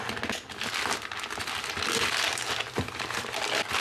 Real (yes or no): yes